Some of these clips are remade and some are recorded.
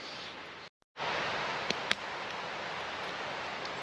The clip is recorded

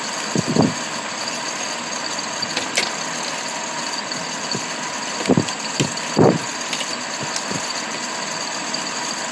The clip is recorded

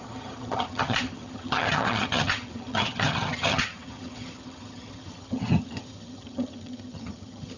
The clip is remade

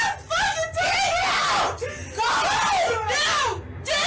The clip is recorded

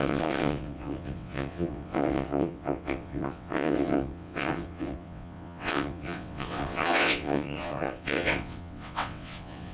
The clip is remade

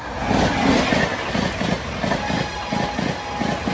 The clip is recorded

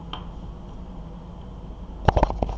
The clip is recorded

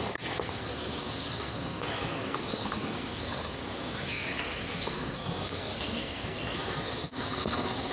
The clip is remade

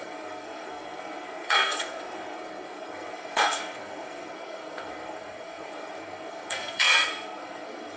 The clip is remade